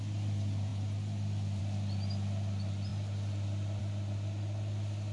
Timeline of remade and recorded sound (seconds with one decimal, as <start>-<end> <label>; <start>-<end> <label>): 0.0-5.1 recorded